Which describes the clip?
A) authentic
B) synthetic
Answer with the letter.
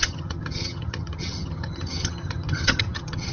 B